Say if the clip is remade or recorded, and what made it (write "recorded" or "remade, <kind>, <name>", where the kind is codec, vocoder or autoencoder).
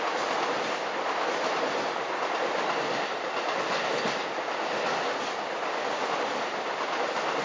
recorded